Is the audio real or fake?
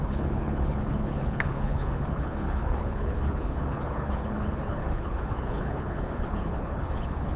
fake